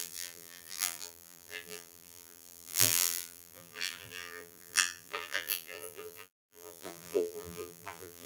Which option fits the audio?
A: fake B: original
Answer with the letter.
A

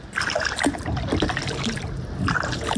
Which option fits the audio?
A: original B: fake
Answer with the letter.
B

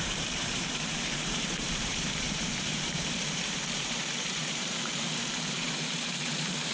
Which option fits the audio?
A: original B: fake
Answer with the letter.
B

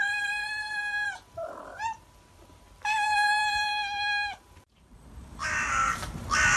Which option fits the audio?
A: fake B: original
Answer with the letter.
A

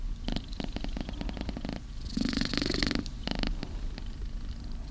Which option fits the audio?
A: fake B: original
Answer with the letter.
A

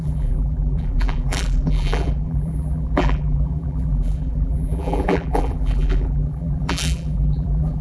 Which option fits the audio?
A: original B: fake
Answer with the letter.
B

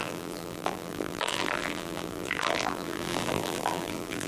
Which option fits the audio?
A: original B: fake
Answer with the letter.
B